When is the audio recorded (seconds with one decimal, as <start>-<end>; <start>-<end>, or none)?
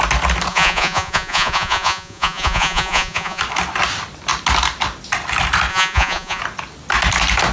0.0-0.5; 3.4-5.7; 6.4-7.5